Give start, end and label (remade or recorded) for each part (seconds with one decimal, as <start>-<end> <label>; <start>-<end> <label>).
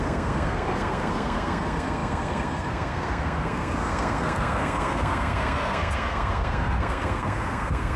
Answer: 0.0-8.0 remade